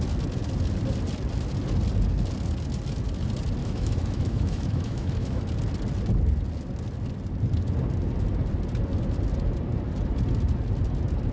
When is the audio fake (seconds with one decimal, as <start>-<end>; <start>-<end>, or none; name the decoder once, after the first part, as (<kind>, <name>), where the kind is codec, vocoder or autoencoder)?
3.6-5.4 (autoencoder, DAC-VAE)